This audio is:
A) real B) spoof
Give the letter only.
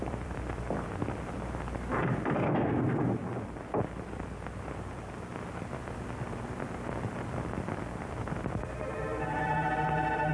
B